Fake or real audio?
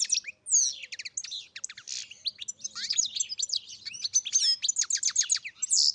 real